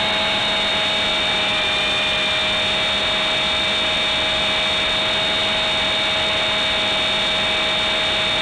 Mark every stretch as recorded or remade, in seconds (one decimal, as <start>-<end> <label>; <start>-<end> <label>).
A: 0.0-8.4 recorded